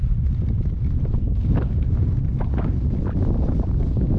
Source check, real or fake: fake